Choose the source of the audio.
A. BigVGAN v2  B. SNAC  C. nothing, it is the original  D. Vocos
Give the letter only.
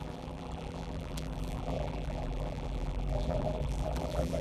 A